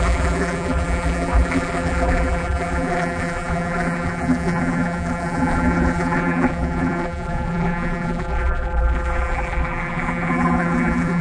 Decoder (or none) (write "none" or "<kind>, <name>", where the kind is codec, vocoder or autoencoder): vocoder, BigVGAN v2